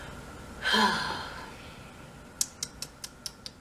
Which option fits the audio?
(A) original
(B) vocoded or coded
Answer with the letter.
A